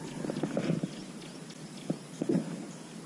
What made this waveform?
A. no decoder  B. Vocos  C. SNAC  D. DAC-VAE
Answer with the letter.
A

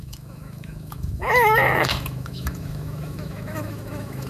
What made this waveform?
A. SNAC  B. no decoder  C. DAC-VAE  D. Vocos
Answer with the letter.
C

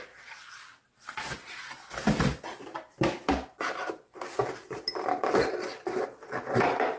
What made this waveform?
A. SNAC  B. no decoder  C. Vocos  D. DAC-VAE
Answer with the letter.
B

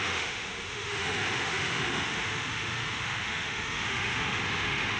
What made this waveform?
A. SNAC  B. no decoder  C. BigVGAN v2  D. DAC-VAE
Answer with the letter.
D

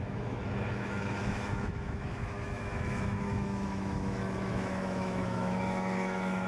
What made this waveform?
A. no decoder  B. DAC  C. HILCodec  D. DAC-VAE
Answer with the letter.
D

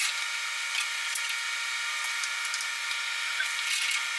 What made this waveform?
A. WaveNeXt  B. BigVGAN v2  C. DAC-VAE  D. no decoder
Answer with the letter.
D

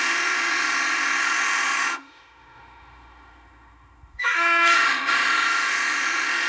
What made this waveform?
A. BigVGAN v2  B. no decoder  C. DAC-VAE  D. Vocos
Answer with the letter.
C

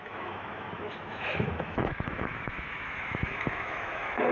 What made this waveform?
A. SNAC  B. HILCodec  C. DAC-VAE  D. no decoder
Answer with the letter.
C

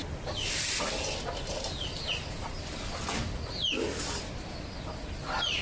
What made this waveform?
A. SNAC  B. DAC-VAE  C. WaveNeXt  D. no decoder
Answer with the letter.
D